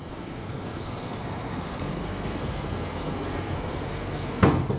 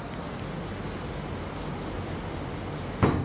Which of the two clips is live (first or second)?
second